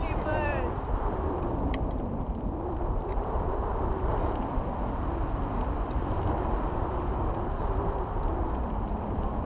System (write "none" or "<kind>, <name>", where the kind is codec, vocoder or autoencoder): vocoder, BigVGAN v2